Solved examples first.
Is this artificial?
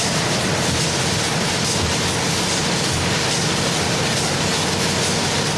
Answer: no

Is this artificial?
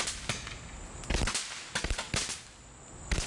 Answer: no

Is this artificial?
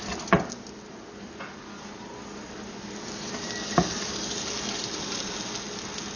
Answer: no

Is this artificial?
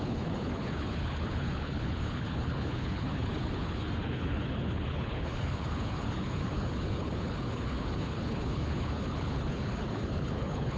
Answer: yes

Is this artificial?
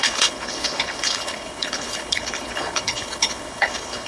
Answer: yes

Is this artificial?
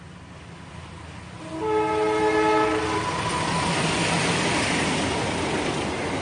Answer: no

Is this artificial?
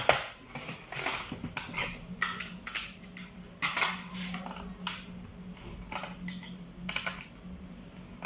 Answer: no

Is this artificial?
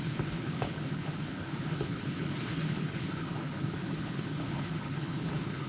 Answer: yes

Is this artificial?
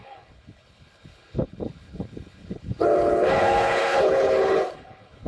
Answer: yes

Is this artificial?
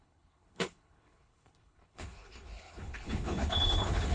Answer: yes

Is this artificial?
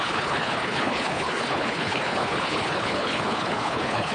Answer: yes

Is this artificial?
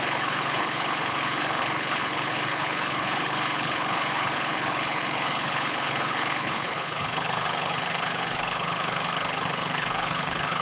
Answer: yes